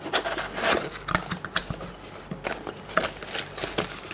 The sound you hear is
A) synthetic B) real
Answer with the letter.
B